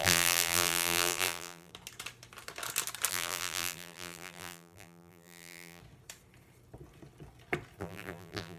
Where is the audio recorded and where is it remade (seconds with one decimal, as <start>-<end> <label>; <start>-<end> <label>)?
0.0-1.7 remade; 1.7-3.1 recorded; 3.1-5.8 remade; 5.8-7.8 recorded; 7.8-8.6 remade